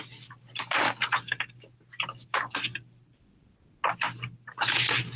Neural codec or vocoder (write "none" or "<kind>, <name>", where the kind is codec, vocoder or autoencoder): none